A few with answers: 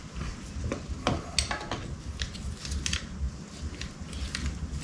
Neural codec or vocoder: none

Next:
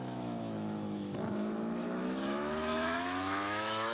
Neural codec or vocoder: autoencoder, DAC-VAE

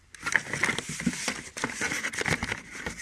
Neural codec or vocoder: none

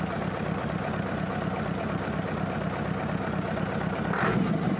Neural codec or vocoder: none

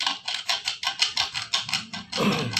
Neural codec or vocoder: none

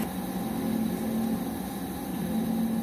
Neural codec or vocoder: none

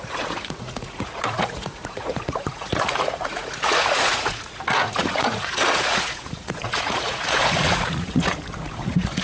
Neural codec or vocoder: vocoder, Vocos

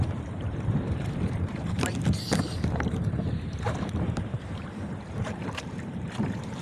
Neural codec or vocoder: vocoder, BigVGAN v2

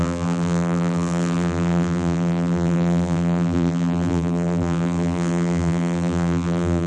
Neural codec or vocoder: vocoder, BigVGAN v2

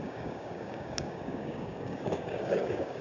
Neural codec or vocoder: codec, DAC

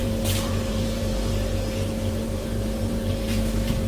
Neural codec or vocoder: vocoder, BigVGAN v2